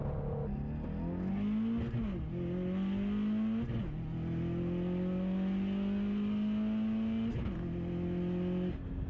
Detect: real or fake real